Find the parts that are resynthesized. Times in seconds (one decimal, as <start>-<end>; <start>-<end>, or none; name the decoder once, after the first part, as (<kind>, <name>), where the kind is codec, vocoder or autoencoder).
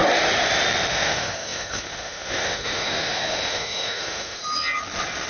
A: 0.9-4.4 (autoencoder, DAC-VAE)